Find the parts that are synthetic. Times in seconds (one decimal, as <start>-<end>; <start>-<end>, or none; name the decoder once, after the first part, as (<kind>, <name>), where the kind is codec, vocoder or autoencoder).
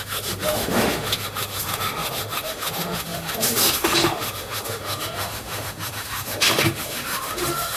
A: 0.0-7.8 (autoencoder, DAC-VAE)